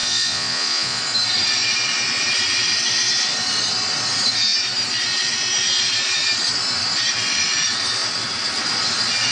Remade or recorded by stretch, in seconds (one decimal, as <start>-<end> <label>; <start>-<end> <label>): 0.0-1.0 remade; 1.0-9.3 recorded